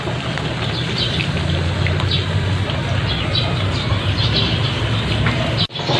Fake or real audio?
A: real